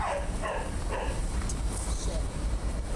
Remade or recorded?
remade